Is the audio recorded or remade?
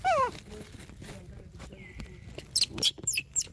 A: recorded